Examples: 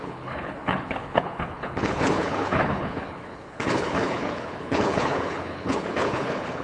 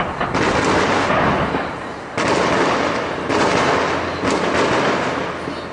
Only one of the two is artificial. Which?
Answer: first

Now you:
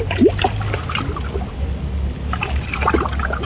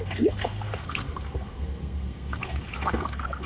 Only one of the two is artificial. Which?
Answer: second